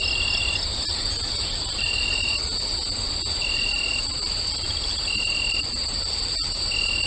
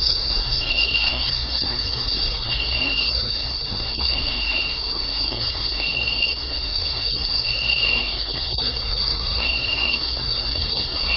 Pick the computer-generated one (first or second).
second